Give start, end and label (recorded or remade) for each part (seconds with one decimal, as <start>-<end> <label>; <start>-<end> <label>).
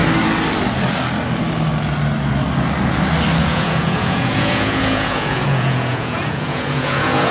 0.0-3.4 recorded; 3.4-7.3 remade